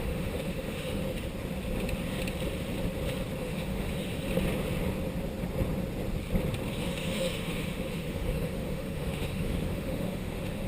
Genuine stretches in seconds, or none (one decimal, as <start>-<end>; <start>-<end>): 1.0-3.4; 4.1-6.7